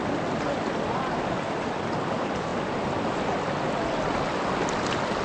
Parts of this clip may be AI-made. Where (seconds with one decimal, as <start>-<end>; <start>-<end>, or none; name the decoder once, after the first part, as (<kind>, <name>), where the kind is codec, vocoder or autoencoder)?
none